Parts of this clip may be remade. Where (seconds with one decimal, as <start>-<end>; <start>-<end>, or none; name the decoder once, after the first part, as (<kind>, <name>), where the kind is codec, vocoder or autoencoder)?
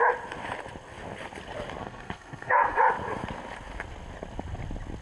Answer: 1.8-2.8 (codec, SNAC)